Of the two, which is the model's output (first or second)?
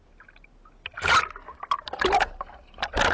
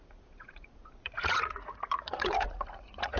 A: second